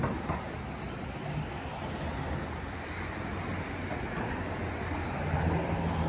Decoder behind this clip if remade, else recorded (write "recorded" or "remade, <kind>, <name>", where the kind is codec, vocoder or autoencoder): recorded